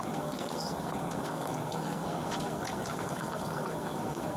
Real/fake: fake